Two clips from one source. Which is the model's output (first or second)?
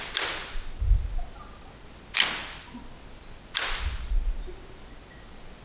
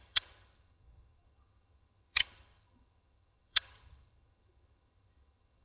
second